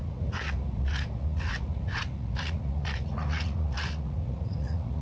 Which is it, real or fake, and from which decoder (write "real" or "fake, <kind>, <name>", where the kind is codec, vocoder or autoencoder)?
fake, vocoder, Vocos